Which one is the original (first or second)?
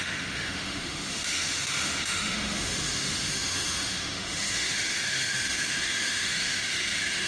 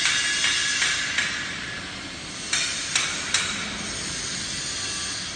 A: second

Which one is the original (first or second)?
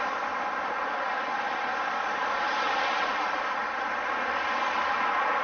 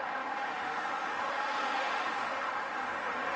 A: first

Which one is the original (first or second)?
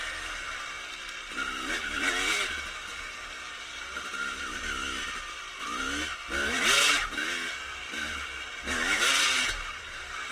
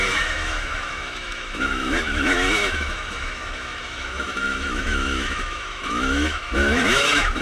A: first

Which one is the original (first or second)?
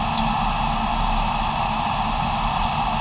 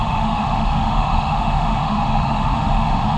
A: first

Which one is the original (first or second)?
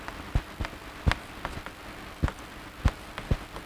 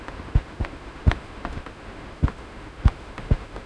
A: first